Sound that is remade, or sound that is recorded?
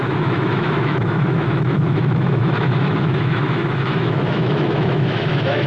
remade